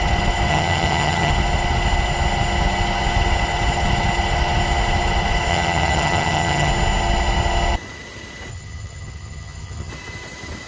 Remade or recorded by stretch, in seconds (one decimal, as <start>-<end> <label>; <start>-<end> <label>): 0.0-0.5 recorded; 0.5-1.3 remade; 1.3-5.5 recorded; 5.5-6.7 remade; 6.7-8.5 recorded; 8.5-9.9 remade; 9.9-10.7 recorded